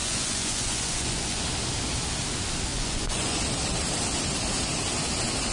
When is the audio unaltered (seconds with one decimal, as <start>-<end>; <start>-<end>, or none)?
1.4-2.7; 3.4-5.5